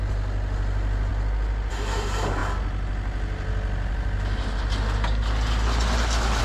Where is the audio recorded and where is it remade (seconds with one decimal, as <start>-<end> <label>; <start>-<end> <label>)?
0.0-6.4 recorded